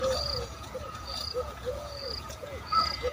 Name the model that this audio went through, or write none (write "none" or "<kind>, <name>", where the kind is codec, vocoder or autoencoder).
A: vocoder, Vocos